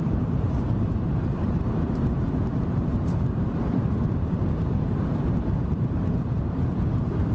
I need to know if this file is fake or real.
fake